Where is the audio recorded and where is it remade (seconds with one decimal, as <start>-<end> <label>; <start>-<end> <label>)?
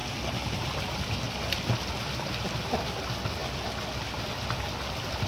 0.0-5.3 recorded